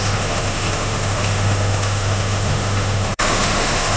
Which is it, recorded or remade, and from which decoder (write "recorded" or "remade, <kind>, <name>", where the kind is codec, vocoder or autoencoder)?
remade, autoencoder, DAC-VAE